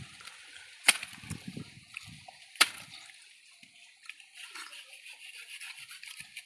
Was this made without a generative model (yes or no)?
no